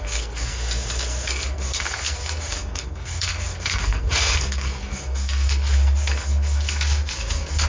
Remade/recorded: remade